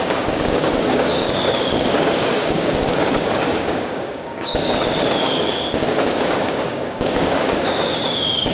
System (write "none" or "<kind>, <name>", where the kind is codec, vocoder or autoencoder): codec, DAC